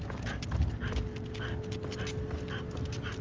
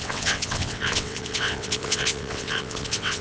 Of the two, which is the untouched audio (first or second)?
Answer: first